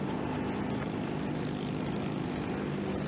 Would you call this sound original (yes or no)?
yes